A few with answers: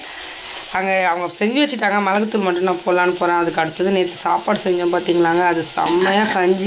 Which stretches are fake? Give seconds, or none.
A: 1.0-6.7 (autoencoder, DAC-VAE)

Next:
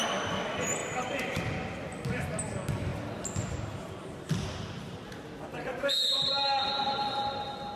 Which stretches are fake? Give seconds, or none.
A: 0.8-1.4 (vocoder, BigVGAN v2); 5.5-6.7

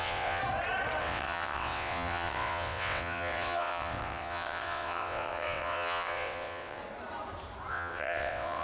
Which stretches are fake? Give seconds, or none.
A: 0.0-0.4 (vocoder, WaveNeXt); 1.0-6.8; 7.7-8.6

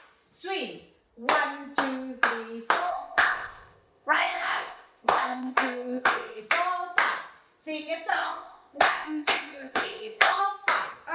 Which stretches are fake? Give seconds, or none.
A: 2.9-6.4 (codec, ZipCodec); 8.1-10.4

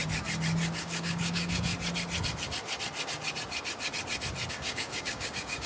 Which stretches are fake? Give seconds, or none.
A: 0.8-1.7 (codec, DAC); 4.5-5.7

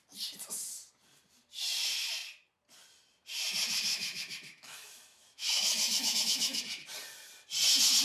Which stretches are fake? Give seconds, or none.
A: 3.9-6.6 (autoencoder, DAC-VAE)

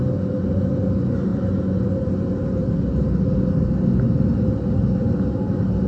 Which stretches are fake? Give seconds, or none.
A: none

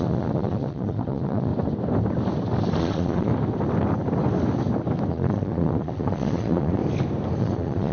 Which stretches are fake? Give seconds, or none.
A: 0.0-1.5 (vocoder, Vocos); 2.8-3.3; 5.1-6.8; 7.4-7.9